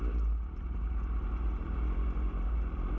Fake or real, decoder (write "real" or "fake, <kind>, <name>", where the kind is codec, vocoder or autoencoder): real